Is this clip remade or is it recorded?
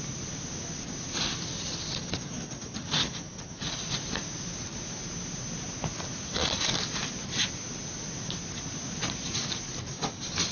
recorded